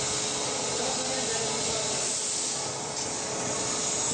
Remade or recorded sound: recorded